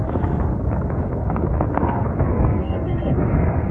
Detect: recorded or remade remade